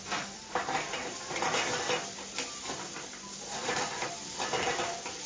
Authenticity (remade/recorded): recorded